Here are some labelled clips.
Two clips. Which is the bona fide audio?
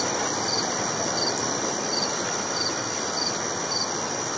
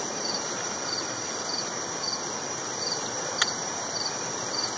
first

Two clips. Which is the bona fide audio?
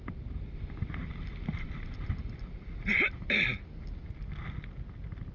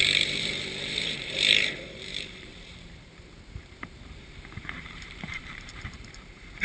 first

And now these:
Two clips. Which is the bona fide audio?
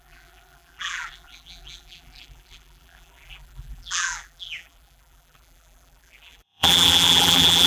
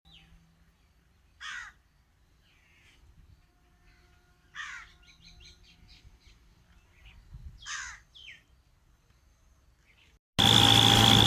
second